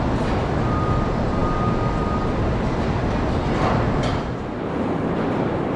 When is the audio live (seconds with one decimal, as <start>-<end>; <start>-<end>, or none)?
0.0-5.8